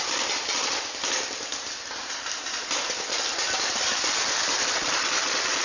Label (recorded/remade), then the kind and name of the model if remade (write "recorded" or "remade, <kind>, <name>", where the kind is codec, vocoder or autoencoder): recorded